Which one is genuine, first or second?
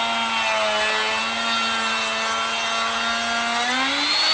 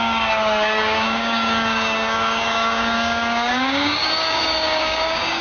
first